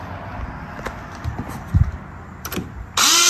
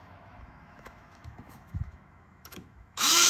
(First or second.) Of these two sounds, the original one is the first